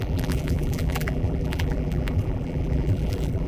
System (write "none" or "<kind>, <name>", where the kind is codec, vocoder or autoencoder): vocoder, BigVGAN v2